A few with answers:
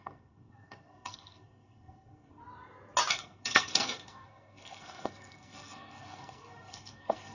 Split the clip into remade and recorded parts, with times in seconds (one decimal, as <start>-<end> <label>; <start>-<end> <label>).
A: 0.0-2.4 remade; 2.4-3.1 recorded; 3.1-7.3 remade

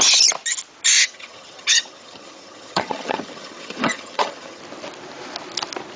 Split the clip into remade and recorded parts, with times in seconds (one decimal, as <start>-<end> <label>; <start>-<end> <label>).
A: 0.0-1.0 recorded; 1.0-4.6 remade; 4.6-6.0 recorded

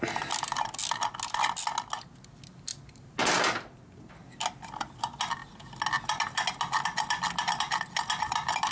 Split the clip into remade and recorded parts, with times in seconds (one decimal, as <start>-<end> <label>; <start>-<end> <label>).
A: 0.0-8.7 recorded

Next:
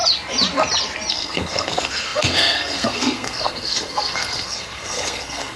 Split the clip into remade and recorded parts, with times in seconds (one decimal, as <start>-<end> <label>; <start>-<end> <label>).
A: 0.0-1.1 recorded; 1.1-5.6 remade